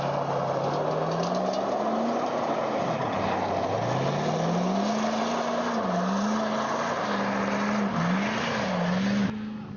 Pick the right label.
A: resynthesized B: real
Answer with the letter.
B